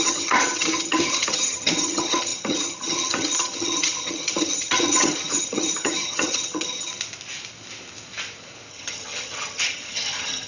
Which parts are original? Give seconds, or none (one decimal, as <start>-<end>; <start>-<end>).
6.9-8.7